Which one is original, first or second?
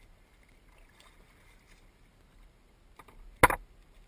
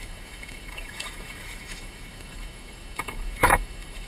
first